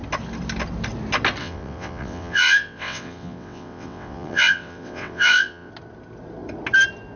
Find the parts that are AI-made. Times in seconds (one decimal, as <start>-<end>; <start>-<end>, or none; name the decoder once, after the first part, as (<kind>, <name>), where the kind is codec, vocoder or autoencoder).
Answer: 1.4-5.7 (vocoder, WaveNeXt)